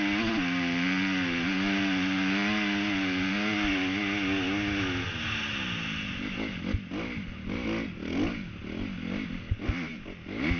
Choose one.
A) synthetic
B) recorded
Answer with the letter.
B